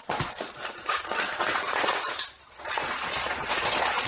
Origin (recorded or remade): remade